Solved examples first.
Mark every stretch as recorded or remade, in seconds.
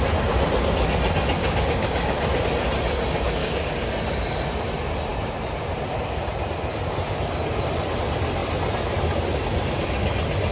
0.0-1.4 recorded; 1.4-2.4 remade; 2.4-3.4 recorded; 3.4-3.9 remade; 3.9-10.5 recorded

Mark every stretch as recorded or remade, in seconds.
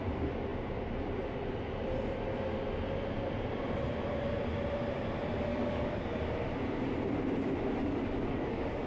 0.0-5.5 recorded; 5.5-6.3 remade; 6.3-7.8 recorded; 7.8-8.9 remade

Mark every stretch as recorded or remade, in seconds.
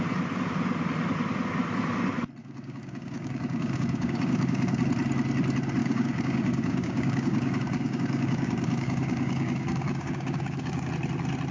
0.0-2.4 recorded; 2.4-4.8 remade; 4.8-5.8 recorded; 5.8-10.9 remade; 10.9-11.5 recorded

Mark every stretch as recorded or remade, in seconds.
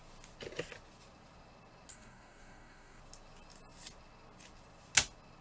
0.0-1.9 recorded; 1.9-3.0 remade; 3.0-5.4 recorded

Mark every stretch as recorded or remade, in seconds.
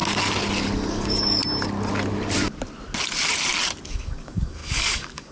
0.0-0.9 recorded; 0.9-1.4 remade; 1.4-3.8 recorded; 3.8-5.3 remade